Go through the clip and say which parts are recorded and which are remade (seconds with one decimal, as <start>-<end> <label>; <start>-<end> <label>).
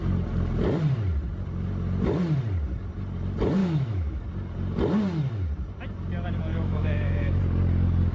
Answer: 0.0-3.6 recorded; 3.6-4.2 remade; 4.2-6.5 recorded; 6.5-7.4 remade; 7.4-8.1 recorded